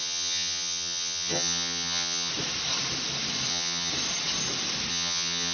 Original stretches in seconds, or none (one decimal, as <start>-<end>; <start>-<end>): 2.3-3.5; 3.9-4.9